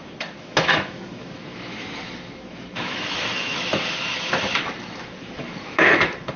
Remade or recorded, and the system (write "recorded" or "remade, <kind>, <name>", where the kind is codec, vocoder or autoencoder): remade, autoencoder, DAC-VAE